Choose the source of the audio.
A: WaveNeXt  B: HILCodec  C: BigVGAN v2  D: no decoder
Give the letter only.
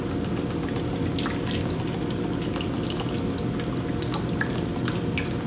D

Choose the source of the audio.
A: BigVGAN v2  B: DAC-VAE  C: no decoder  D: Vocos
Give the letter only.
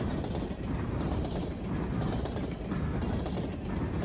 A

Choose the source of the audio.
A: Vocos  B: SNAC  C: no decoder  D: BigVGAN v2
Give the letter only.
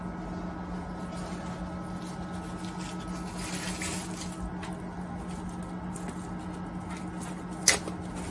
C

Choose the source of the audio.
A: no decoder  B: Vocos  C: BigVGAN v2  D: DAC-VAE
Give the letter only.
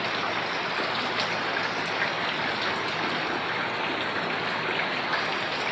A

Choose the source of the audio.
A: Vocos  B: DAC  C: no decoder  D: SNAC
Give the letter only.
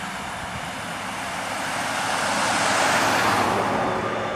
C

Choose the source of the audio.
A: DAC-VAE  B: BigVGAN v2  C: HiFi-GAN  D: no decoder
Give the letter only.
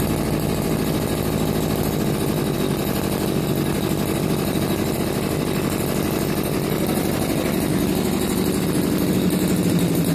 D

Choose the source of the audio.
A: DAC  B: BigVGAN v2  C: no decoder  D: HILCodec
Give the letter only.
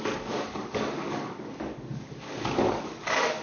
A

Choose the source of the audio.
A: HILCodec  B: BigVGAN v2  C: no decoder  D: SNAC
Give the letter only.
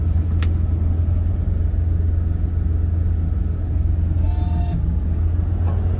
C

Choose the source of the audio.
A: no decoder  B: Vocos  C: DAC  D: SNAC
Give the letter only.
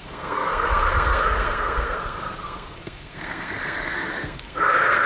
D